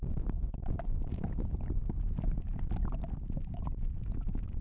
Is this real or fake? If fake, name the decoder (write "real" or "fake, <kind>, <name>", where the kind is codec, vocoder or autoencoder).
real